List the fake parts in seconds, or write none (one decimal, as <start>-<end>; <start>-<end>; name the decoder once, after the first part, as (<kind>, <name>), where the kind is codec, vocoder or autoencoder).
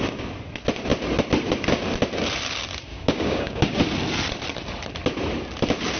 2.9-3.8 (codec, DAC)